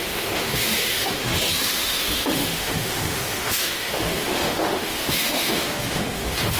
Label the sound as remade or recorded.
remade